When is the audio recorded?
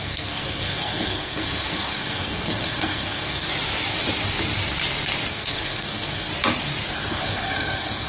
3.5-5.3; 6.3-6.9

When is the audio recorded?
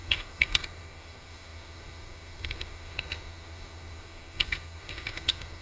none